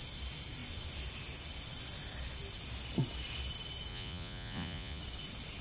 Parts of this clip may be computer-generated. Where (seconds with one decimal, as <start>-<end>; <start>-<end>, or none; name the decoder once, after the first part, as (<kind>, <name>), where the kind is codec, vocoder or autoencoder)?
3.9-5.0 (vocoder, Vocos)